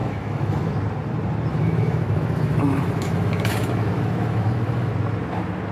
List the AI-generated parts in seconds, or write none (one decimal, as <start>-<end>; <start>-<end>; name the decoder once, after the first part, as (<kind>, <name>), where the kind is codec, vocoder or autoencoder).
0.0-0.7 (autoencoder, DAC-VAE); 1.5-4.9